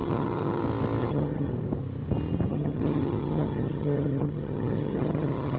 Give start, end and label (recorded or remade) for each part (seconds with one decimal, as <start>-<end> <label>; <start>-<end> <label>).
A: 0.0-0.6 remade; 0.6-1.0 recorded; 1.0-1.5 remade; 1.5-2.5 recorded; 2.5-5.6 remade